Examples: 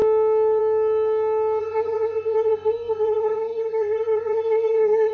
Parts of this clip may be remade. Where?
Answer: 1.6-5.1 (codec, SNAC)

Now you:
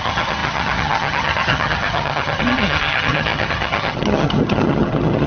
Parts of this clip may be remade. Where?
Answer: 0.0-5.3 (vocoder, HiFi-GAN)

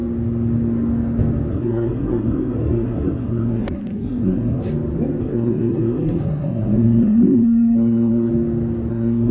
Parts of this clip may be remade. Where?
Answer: 1.5-4.7 (codec, SNAC); 5.2-8.3; 8.9-9.3

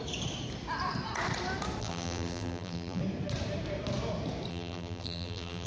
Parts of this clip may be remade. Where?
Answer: 1.8-3.0 (vocoder, BigVGAN v2); 4.5-5.7

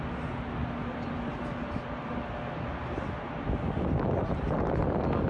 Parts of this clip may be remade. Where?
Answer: none